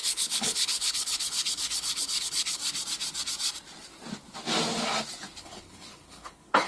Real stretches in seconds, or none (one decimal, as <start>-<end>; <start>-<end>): 2.6-5.4